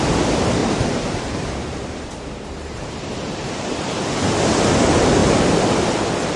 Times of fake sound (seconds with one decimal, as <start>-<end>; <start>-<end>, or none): 0.6-4.4; 5.2-5.9